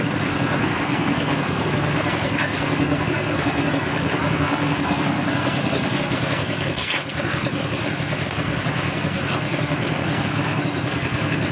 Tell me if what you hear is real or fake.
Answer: fake